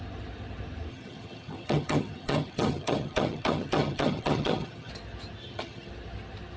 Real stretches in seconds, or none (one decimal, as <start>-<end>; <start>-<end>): 0.0-0.9; 4.9-5.4; 5.9-6.6